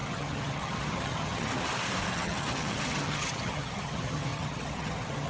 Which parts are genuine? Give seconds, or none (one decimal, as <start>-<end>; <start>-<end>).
1.5-2.1